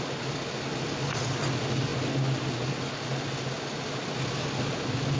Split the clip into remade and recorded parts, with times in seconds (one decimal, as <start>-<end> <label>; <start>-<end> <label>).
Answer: 0.0-5.2 recorded